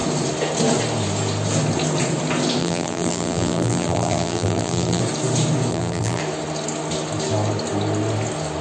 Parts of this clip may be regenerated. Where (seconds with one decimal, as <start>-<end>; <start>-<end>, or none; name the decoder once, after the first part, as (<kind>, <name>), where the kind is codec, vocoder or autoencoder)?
2.6-5.0 (vocoder, BigVGAN v2); 5.7-6.2